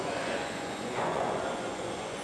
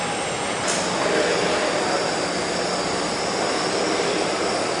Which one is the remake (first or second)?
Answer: first